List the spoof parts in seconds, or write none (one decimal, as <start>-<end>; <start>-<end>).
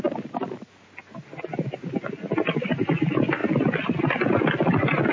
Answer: none